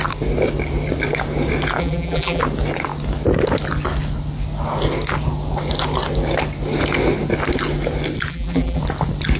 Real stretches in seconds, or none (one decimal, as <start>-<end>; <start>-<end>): 0.0-1.8; 2.4-8.3; 8.8-9.4